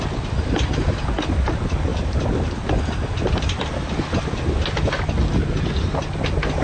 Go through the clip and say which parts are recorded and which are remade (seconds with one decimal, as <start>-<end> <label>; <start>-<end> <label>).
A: 0.0-6.6 recorded

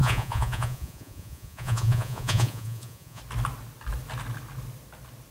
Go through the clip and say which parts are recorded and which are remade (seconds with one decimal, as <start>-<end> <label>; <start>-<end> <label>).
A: 0.0-3.2 remade; 3.2-5.3 recorded

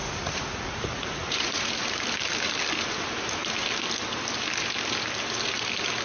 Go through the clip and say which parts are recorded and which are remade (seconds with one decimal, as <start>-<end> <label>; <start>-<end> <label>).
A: 0.0-1.7 remade; 1.7-6.0 recorded